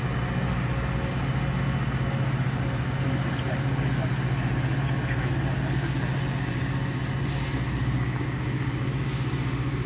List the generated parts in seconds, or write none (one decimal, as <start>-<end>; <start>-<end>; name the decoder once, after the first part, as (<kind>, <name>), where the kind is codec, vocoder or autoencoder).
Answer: 7.8-9.3 (codec, DAC)